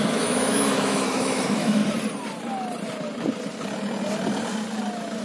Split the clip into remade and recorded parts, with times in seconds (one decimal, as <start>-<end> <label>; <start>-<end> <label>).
0.0-1.8 remade; 1.8-5.2 recorded